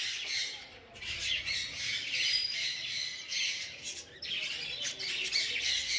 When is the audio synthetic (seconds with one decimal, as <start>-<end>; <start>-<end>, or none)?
none